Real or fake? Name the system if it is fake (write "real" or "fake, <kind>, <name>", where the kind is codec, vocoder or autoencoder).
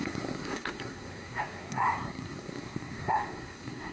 fake, codec, SNAC